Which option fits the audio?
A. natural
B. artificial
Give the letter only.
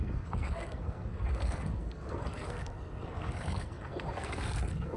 B